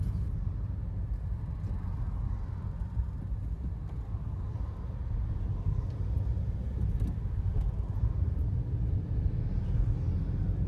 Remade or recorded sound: recorded